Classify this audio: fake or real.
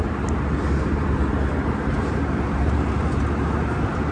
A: fake